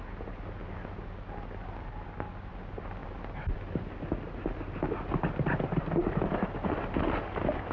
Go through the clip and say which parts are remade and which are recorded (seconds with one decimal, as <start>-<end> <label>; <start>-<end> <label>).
0.0-7.7 recorded